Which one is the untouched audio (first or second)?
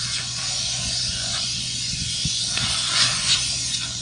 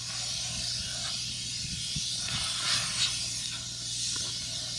second